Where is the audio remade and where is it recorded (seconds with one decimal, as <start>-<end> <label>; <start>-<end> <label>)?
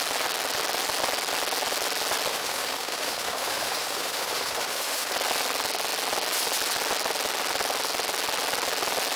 0.0-2.3 recorded; 2.3-5.1 remade; 5.1-9.2 recorded